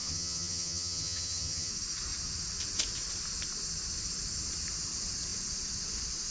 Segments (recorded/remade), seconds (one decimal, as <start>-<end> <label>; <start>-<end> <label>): 0.0-1.7 remade; 1.7-6.3 recorded